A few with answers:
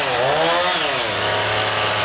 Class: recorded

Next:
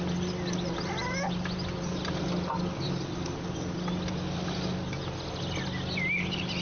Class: recorded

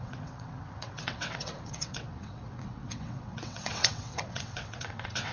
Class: remade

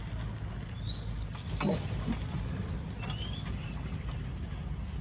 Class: recorded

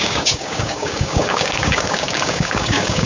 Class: remade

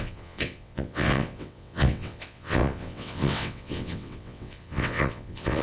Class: remade